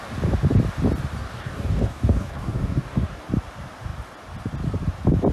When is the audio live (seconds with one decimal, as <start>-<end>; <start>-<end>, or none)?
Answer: 0.0-1.2; 3.2-5.3